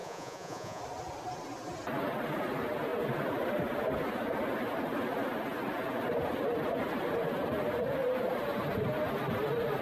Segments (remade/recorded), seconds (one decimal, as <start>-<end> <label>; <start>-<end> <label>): 0.0-0.8 remade; 0.8-9.8 recorded